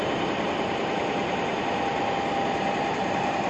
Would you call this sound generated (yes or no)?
yes